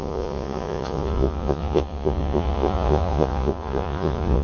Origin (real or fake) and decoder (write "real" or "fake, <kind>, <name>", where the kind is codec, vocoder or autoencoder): fake, vocoder, Vocos